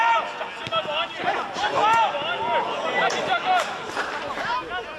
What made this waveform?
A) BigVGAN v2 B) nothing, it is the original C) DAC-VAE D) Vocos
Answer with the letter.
B